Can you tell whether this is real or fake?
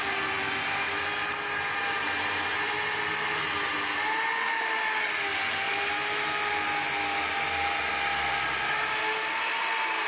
real